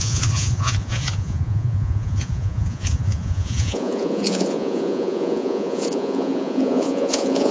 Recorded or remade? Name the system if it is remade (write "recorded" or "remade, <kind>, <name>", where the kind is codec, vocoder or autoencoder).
remade, vocoder, Vocos